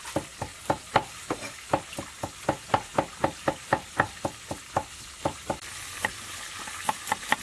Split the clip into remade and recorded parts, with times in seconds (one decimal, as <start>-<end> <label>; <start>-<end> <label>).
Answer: 0.0-0.5 recorded; 0.5-1.3 remade; 1.3-7.4 recorded